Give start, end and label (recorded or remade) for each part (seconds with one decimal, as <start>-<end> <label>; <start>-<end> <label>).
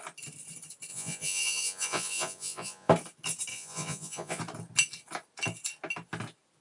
0.0-0.9 recorded; 0.9-2.9 remade; 2.9-3.5 recorded; 3.5-4.4 remade; 4.4-6.6 recorded